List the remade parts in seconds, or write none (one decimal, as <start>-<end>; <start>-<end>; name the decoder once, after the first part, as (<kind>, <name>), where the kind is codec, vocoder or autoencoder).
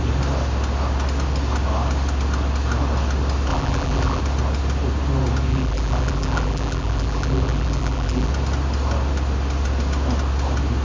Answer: 3.5-4.2 (vocoder, BigVGAN v2); 5.5-8.3